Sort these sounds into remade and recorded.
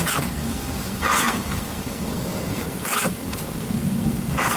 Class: remade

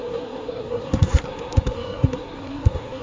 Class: remade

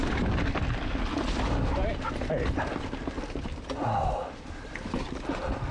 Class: recorded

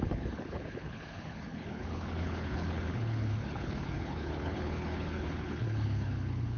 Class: remade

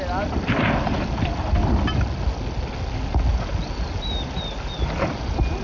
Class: recorded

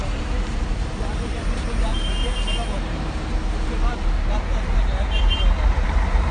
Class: remade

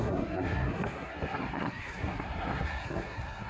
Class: remade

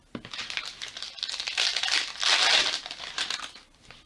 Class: recorded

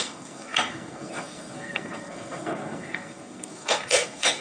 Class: remade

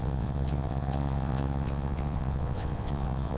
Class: remade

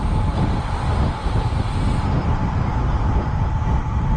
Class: recorded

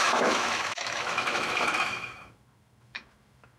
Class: remade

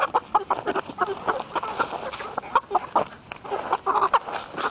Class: recorded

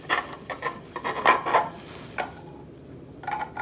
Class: recorded